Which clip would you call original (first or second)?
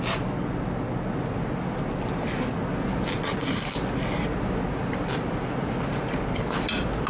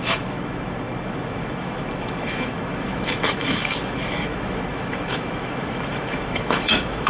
first